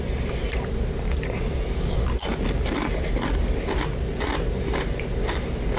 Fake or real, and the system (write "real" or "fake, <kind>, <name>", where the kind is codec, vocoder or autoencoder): real